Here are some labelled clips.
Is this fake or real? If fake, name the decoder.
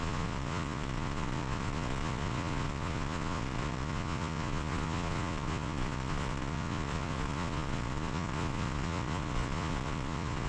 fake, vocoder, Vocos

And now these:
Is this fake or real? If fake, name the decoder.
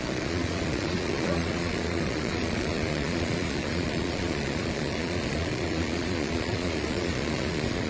fake, vocoder, Vocos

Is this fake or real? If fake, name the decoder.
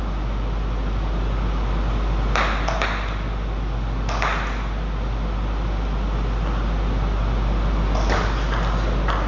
real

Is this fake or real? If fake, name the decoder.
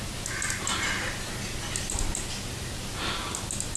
real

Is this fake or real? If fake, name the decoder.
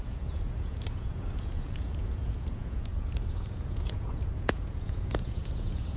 fake, vocoder, Vocos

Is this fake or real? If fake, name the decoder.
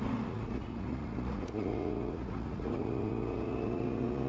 fake, vocoder, Vocos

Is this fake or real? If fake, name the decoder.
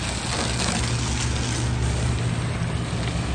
real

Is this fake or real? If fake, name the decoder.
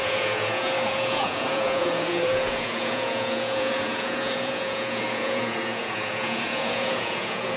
fake, vocoder, Vocos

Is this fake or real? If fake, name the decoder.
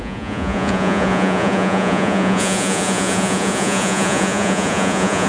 fake, vocoder, Vocos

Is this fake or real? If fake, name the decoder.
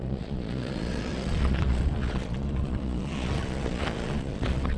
fake, vocoder, Vocos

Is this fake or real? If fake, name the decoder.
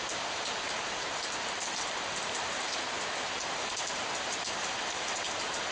real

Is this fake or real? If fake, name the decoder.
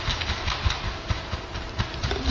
real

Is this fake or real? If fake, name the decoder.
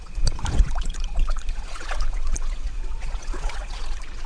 fake, vocoder, Vocos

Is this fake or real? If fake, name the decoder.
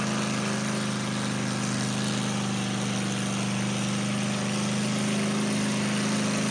real